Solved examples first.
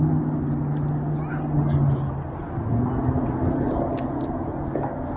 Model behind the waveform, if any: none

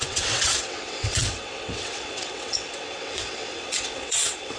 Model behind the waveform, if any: vocoder, WaveNeXt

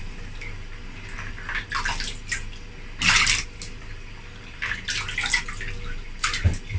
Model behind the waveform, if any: none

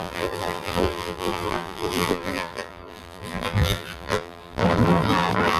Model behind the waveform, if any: vocoder, BigVGAN v2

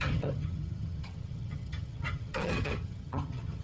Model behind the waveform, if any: vocoder, HiFi-GAN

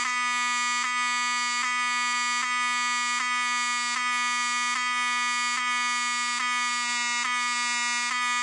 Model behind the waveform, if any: none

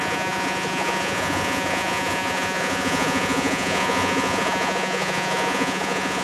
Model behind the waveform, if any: vocoder, Vocos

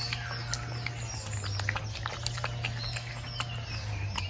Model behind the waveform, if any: none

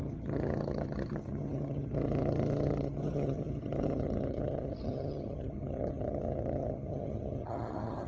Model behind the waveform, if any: vocoder, HiFi-GAN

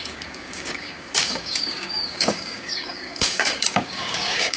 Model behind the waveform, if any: codec, DAC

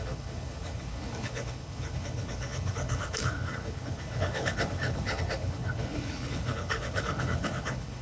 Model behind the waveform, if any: codec, HILCodec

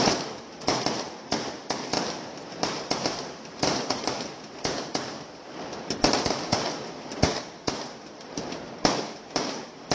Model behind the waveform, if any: vocoder, BigVGAN v2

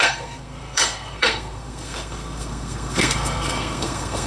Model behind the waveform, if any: codec, SNAC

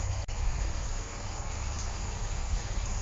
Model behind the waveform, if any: codec, SNAC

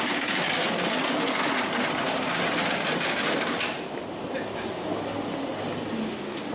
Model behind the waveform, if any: none